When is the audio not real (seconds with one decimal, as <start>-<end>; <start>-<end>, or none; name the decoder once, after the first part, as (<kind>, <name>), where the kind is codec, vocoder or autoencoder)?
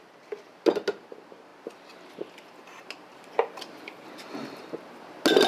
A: none